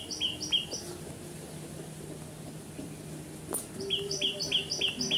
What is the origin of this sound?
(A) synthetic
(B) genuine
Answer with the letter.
B